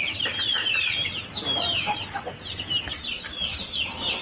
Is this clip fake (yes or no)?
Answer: no